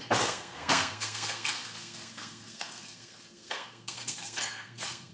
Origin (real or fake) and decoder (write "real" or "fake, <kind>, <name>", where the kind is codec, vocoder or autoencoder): fake, codec, SNAC